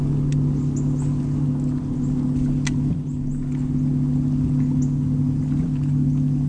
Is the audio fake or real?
real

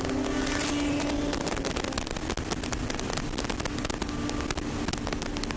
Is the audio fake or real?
real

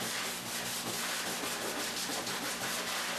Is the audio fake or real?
real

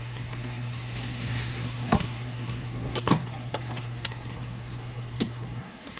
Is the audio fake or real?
fake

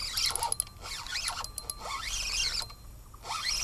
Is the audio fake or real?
real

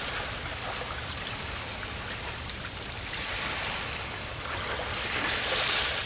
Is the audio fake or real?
real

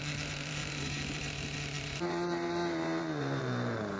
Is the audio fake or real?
fake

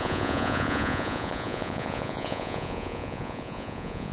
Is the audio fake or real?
fake